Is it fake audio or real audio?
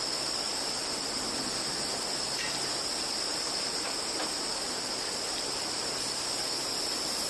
real